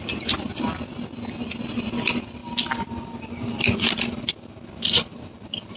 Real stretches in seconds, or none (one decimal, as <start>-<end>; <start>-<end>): 0.0-5.8

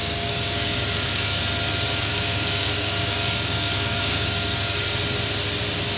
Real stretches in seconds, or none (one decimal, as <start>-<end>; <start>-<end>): 1.4-2.1; 5.0-6.0

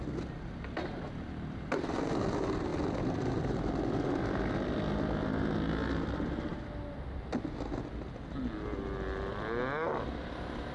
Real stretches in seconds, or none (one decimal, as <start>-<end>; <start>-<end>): 0.0-10.7